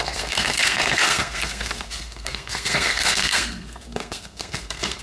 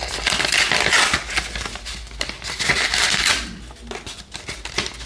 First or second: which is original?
second